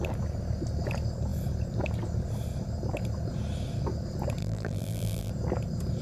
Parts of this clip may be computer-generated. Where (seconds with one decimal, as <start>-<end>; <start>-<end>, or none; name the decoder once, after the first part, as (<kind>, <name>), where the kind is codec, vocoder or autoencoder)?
4.4-5.3 (vocoder, BigVGAN v2)